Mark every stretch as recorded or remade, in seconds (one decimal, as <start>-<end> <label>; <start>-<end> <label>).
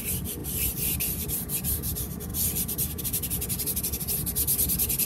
0.0-0.4 recorded; 0.4-1.0 remade; 1.0-5.1 recorded